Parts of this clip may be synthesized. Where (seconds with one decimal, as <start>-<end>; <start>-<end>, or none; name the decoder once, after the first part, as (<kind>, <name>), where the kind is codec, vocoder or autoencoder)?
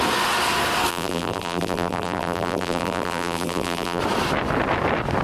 0.9-4.0 (vocoder, BigVGAN v2)